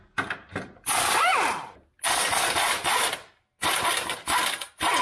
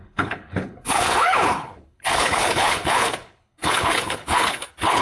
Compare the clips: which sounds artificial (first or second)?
second